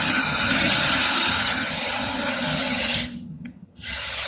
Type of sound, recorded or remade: remade